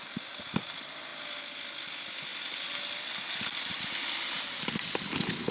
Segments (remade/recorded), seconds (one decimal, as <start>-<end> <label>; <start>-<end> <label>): 0.0-5.5 recorded